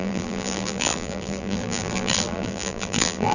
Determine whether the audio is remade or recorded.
remade